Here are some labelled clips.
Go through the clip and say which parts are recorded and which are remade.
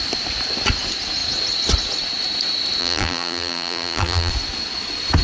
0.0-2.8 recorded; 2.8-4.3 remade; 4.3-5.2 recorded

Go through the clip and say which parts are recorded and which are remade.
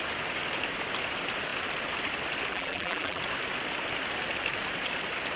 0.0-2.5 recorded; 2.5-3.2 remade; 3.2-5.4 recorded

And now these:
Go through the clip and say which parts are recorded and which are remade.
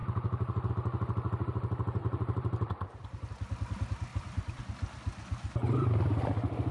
0.0-0.7 remade; 0.7-2.0 recorded; 2.0-3.3 remade; 3.3-4.1 recorded; 4.1-4.6 remade; 4.6-6.7 recorded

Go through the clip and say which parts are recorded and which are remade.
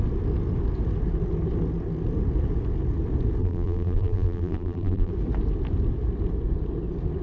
0.0-3.4 recorded; 3.4-5.1 remade; 5.1-7.2 recorded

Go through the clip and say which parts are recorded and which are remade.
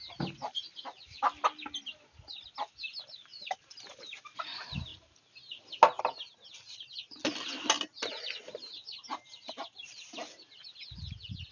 0.0-3.3 recorded; 3.3-4.2 remade; 4.2-9.1 recorded; 9.1-10.1 remade; 10.1-11.5 recorded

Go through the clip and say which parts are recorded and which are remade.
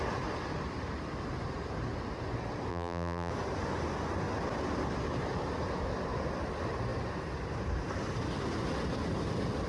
0.0-2.7 recorded; 2.7-3.3 remade; 3.3-9.7 recorded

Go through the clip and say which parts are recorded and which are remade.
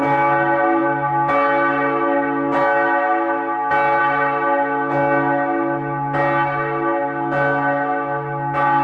0.0-8.8 recorded